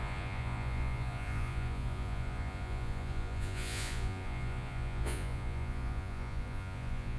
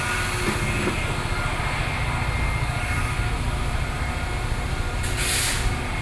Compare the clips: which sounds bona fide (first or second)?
second